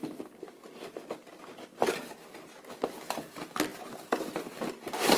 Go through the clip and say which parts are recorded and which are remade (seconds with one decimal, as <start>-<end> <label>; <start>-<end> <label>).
0.0-5.2 recorded